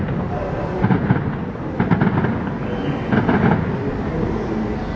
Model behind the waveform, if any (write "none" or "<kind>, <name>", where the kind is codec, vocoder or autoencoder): none